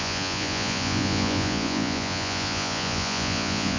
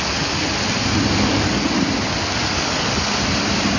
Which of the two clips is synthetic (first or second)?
first